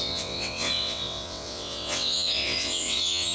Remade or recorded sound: remade